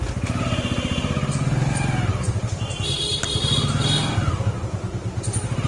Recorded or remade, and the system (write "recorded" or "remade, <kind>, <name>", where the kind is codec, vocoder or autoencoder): recorded